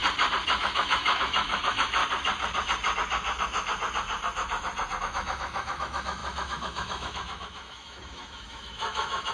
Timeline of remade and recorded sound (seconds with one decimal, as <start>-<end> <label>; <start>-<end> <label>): 0.0-0.6 recorded; 0.6-2.0 remade; 2.0-5.0 recorded; 5.0-9.3 remade